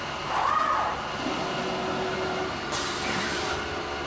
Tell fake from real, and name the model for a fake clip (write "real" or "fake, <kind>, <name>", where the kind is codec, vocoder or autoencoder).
real